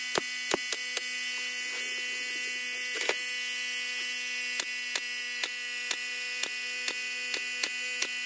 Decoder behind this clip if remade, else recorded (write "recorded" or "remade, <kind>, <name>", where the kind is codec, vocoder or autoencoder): recorded